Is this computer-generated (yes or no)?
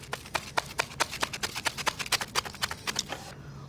no